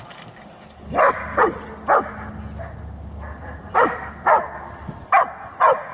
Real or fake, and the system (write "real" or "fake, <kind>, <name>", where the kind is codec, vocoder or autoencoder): real